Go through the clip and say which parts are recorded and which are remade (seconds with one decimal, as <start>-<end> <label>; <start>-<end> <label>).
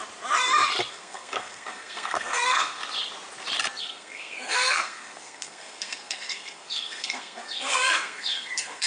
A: 0.0-0.9 recorded; 0.9-2.8 remade; 2.8-3.8 recorded; 3.8-8.9 remade